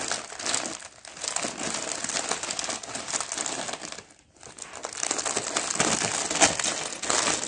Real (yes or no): yes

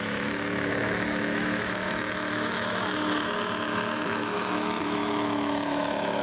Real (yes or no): no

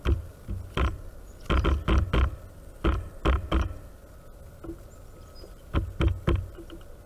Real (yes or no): yes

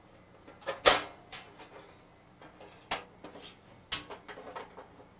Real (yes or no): yes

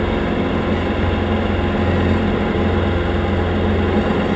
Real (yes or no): yes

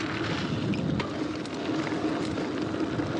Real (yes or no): yes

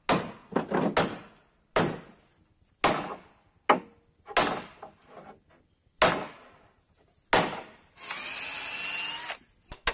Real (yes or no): yes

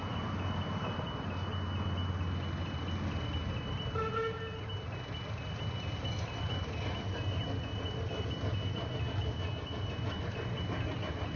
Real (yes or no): yes